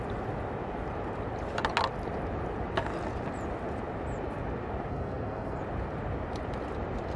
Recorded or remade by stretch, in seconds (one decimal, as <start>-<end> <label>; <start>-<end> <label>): 0.0-4.9 recorded; 4.9-5.6 remade; 5.6-7.2 recorded